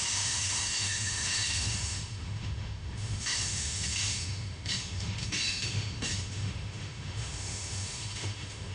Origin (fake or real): fake